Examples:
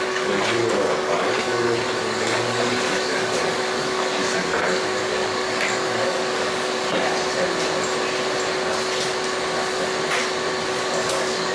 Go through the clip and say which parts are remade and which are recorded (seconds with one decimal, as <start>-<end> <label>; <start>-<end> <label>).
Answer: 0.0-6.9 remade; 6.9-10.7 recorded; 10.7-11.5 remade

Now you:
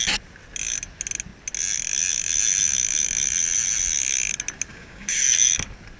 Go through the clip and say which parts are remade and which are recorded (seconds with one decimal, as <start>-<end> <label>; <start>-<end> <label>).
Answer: 0.0-4.7 recorded; 4.7-5.2 remade; 5.2-6.0 recorded

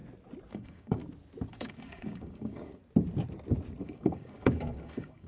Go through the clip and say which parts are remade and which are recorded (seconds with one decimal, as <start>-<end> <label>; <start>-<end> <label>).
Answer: 0.0-0.5 recorded; 0.5-1.0 remade; 1.0-1.5 recorded; 1.5-2.8 remade; 2.8-3.8 recorded; 3.8-5.3 remade